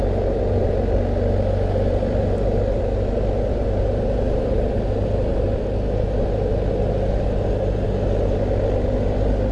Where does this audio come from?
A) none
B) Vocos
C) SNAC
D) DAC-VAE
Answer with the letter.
A